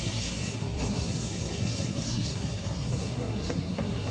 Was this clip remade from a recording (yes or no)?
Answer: yes